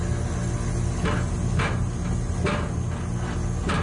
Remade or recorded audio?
recorded